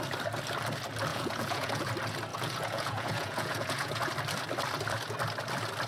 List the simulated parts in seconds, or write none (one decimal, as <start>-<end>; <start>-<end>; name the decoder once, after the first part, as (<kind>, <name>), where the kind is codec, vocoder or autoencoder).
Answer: 1.1-1.9 (vocoder, Vocos); 2.3-4.1